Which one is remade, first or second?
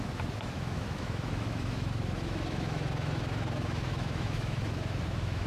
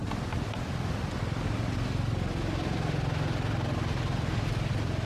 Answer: first